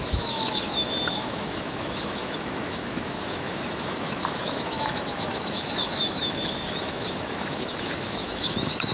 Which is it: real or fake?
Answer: fake